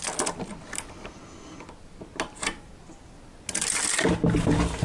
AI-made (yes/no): no